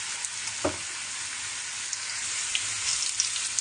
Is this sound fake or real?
real